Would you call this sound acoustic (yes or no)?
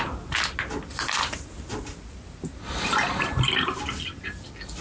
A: yes